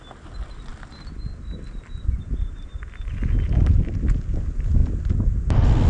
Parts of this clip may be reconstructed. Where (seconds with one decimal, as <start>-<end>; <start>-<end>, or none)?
none